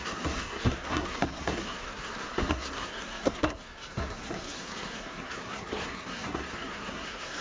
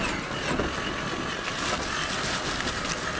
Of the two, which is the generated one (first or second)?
first